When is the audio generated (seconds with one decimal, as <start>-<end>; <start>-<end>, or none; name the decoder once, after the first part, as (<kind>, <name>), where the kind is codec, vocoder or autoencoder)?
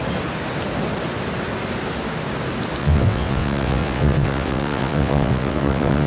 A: 2.8-6.1 (vocoder, WaveNeXt)